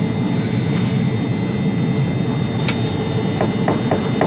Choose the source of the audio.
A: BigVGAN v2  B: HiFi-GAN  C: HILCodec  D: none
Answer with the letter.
D